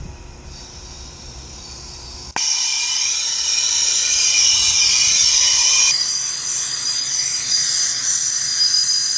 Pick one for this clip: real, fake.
real